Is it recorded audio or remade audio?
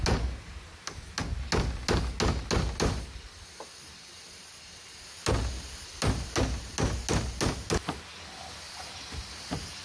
recorded